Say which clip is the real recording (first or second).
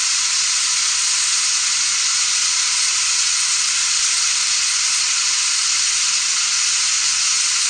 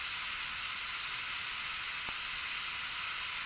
second